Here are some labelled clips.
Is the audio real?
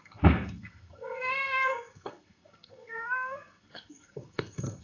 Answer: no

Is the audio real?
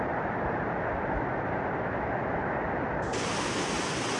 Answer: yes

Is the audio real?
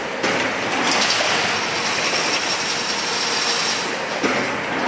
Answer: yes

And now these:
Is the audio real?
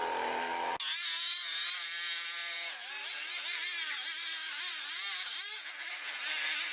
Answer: yes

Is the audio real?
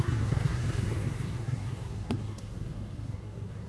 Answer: no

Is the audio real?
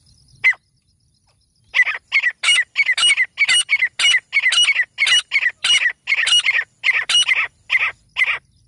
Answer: yes